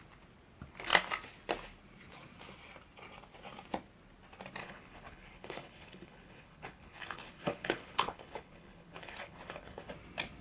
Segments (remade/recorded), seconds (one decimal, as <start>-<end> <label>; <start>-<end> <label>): 0.0-4.6 recorded; 4.6-9.9 remade; 9.9-10.4 recorded